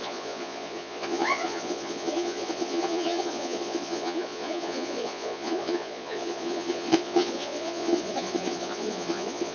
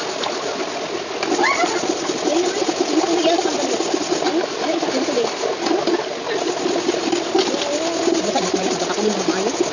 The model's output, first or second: first